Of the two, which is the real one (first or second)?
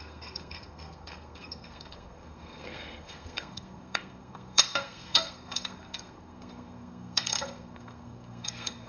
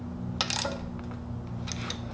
second